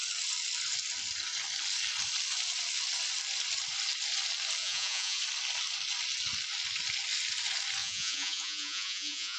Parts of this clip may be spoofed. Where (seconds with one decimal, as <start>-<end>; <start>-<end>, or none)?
4.6-5.2; 7.8-9.4